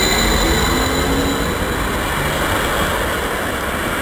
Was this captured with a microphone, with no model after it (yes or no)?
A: yes